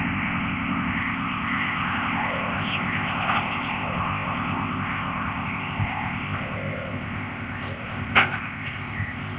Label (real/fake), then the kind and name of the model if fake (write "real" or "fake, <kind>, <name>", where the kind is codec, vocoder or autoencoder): fake, codec, ZipCodec